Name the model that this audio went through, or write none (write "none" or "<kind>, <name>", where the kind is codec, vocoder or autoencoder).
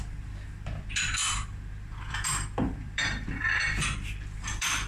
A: vocoder, BigVGAN v2